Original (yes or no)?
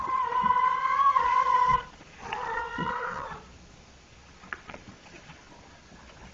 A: no